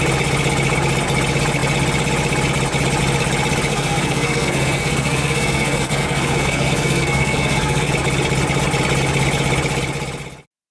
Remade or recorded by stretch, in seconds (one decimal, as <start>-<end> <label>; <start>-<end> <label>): 0.0-3.7 recorded; 3.7-7.9 remade; 7.9-10.7 recorded